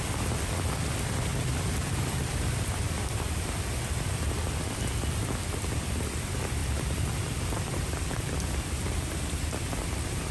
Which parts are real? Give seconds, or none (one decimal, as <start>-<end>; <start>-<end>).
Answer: 0.0-1.3; 5.8-6.6; 9.1-10.3